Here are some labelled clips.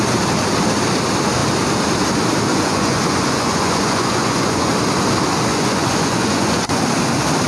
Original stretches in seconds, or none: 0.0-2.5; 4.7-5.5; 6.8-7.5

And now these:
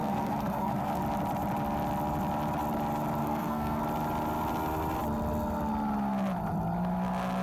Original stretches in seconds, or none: 1.0-3.2; 3.8-7.4

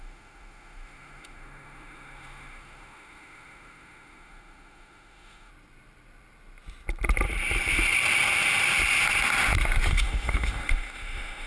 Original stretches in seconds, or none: 5.5-9.9

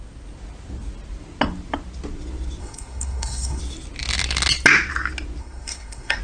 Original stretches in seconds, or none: 0.0-2.6; 3.6-5.4

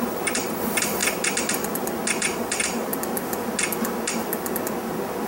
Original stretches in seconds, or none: 1.0-2.1; 2.9-5.3

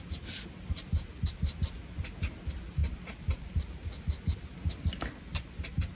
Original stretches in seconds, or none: 0.0-5.9

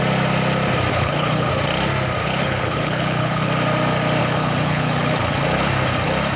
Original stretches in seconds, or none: 0.0-0.9; 1.5-2.2; 3.5-4.2; 5.2-6.4

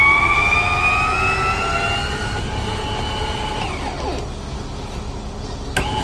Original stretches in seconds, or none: 0.0-6.0